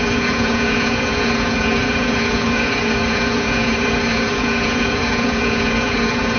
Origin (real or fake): fake